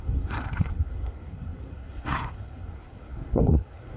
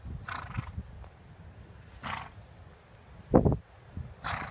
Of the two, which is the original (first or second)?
second